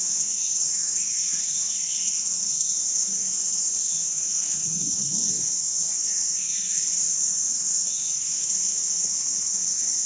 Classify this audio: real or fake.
fake